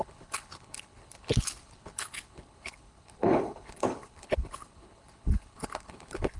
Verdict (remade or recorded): remade